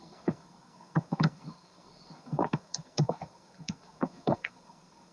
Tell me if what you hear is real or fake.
fake